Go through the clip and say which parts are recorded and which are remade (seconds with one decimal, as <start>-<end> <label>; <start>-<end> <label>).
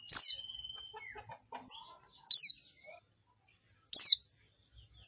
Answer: 0.0-5.1 recorded